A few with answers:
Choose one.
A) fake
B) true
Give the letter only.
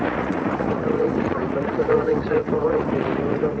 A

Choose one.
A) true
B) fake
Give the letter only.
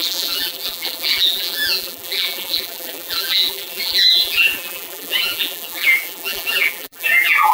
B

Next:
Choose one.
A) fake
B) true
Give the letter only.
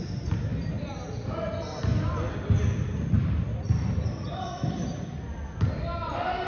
B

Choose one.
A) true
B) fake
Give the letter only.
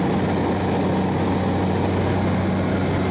A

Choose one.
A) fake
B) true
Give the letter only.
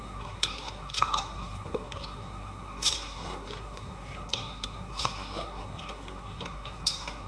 A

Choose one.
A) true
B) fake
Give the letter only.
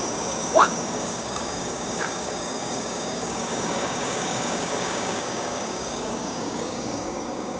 B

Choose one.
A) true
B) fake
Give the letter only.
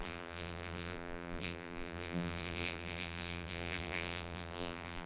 B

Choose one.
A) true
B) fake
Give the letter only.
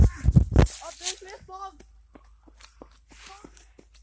A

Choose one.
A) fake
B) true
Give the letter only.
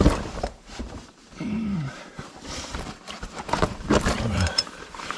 A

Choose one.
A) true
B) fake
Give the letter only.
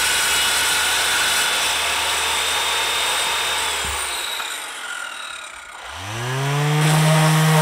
A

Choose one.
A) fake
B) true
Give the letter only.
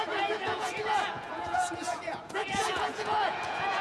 A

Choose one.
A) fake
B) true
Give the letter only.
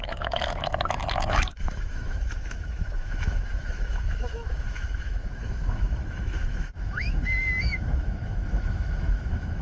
A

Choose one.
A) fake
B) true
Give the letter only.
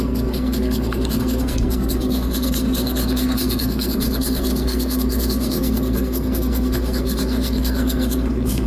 A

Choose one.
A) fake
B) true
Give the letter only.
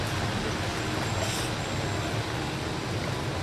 B